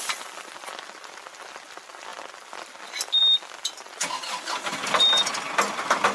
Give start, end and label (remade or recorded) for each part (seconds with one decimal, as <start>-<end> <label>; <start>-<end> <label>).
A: 0.0-6.1 recorded